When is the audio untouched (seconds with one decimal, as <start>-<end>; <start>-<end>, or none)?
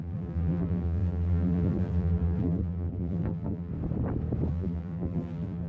3.7-4.5